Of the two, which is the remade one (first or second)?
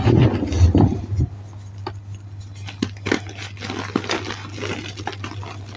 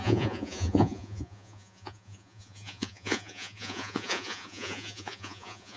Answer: second